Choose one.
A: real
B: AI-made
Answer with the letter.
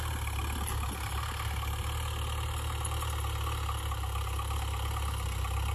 A